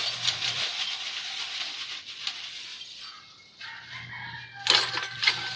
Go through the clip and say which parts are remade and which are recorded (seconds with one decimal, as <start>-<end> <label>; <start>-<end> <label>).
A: 0.0-5.6 recorded